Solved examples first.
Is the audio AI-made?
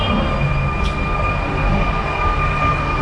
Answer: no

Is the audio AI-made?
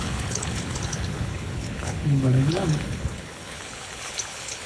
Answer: yes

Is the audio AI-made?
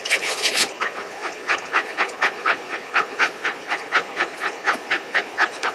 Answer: yes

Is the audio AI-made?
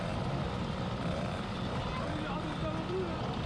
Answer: no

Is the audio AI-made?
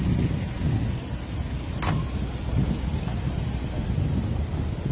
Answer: no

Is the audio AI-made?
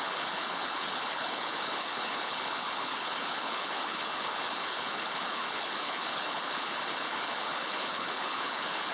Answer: yes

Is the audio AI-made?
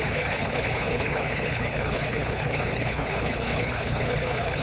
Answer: yes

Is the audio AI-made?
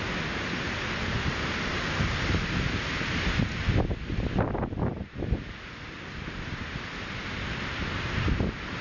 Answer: no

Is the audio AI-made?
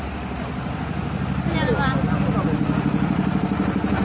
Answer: no